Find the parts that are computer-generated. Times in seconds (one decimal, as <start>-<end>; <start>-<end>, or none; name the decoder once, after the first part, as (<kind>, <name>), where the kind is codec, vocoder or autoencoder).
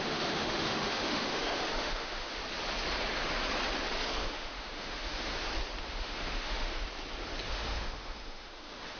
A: 0.0-2.4 (autoencoder, DAC-VAE); 4.2-5.3; 5.8-6.7; 7.5-9.0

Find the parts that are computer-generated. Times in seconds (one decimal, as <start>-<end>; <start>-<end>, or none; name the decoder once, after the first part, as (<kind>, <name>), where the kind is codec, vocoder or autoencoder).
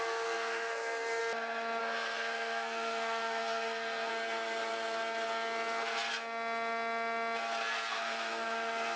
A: 0.0-1.2 (codec, SNAC); 1.8-4.1; 7.9-9.0